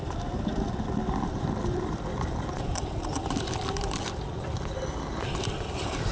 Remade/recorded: remade